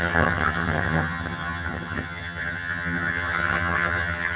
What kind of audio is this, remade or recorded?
remade